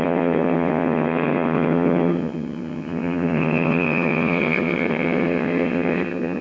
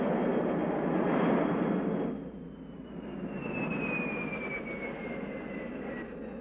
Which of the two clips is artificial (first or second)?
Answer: first